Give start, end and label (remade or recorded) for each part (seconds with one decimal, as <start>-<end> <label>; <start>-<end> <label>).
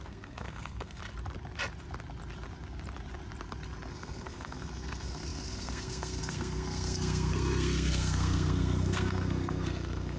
0.0-1.0 remade; 1.0-3.9 recorded; 3.9-10.2 remade